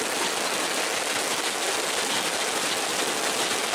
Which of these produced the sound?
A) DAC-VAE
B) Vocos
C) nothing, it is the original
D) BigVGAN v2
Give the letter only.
C